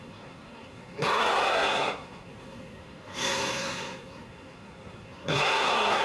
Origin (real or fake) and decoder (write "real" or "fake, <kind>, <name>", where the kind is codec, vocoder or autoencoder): fake, codec, SNAC